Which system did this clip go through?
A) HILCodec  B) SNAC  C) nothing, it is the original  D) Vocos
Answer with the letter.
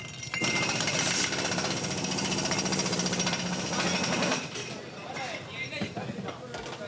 C